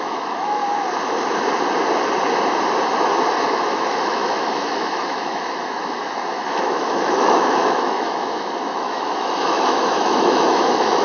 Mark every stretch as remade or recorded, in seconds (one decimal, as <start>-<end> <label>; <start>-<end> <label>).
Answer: 0.0-0.6 remade; 0.6-3.4 recorded; 3.4-11.0 remade